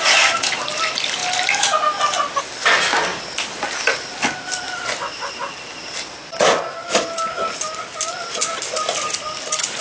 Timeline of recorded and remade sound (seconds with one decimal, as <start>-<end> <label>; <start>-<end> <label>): 0.0-9.8 recorded